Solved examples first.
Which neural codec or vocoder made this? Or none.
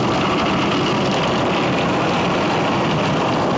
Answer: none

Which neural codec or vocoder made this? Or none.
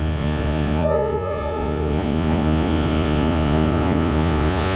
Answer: vocoder, Vocos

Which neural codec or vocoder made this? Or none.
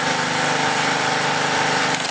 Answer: none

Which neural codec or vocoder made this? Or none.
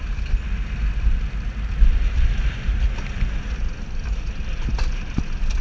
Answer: none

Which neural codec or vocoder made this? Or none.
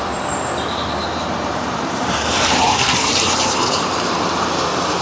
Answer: vocoder, BigVGAN v2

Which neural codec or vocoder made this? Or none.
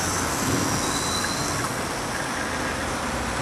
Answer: none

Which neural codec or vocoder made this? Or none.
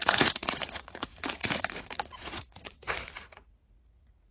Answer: vocoder, Vocos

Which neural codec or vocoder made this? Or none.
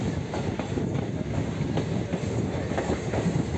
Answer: none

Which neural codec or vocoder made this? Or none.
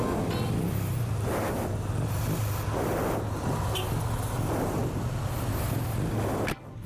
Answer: none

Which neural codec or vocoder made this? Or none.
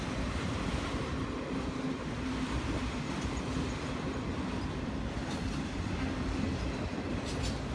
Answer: none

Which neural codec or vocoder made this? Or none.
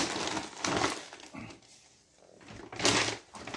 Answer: none